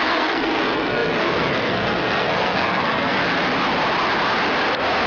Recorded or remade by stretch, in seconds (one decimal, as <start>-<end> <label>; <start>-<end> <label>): 0.0-3.2 remade; 3.2-5.1 recorded